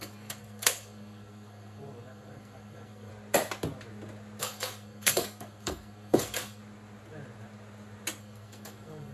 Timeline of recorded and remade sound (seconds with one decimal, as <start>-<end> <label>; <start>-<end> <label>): 0.0-3.1 remade; 3.1-4.4 recorded; 4.4-6.6 remade; 6.6-8.2 recorded; 8.2-9.1 remade